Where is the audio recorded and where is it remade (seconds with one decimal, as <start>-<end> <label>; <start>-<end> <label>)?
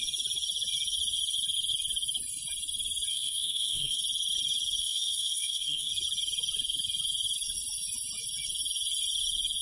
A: 0.0-3.1 recorded; 3.1-4.0 remade; 4.0-4.8 recorded; 4.8-5.9 remade; 5.9-9.6 recorded